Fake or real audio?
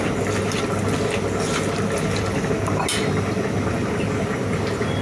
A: real